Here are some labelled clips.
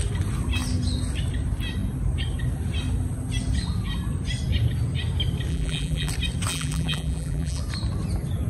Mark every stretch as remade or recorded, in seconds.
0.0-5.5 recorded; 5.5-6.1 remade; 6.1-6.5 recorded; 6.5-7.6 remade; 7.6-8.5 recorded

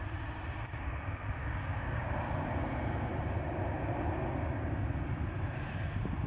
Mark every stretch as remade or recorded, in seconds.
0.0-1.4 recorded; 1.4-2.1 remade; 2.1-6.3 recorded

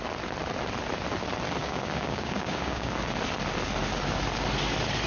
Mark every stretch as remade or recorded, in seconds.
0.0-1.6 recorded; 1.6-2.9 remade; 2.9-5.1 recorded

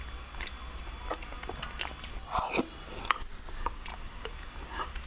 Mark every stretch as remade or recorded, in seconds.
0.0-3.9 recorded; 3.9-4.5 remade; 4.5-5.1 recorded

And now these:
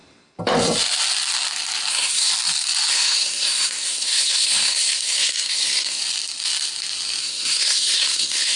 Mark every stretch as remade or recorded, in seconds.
0.0-1.9 recorded; 1.9-2.3 remade; 2.3-2.9 recorded; 2.9-6.0 remade; 6.0-7.2 recorded; 7.2-8.6 remade

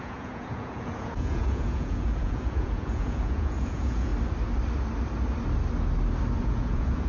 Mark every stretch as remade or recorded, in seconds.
0.0-4.1 remade; 4.1-6.4 recorded; 6.4-7.1 remade